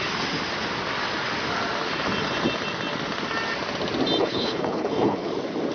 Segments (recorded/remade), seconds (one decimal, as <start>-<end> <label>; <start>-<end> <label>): 0.0-4.2 recorded; 4.2-5.3 remade; 5.3-5.7 recorded

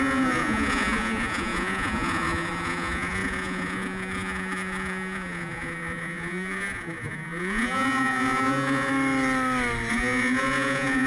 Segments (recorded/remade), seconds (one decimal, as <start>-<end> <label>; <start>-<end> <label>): 0.0-8.9 remade; 8.9-9.9 recorded; 9.9-11.1 remade

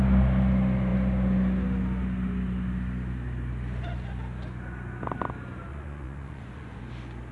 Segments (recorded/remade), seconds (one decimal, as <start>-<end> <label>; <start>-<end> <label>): 0.0-5.7 recorded; 5.7-6.8 remade; 6.8-7.3 recorded